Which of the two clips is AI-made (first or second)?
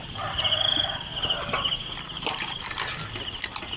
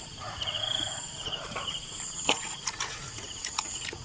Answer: second